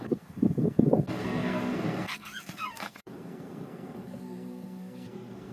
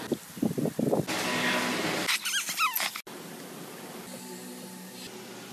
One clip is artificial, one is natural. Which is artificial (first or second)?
first